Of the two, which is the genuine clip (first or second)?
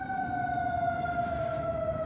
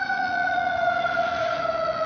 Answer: first